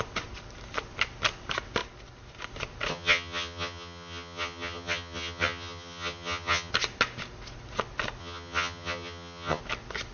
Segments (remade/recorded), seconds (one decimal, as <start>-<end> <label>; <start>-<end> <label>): 0.0-2.9 recorded; 2.9-6.7 remade; 6.7-8.2 recorded; 8.2-9.6 remade; 9.6-10.1 recorded